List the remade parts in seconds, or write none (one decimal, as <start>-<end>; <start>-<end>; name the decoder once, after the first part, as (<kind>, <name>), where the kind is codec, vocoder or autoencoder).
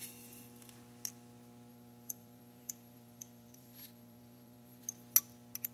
1.7-4.8 (vocoder, BigVGAN v2)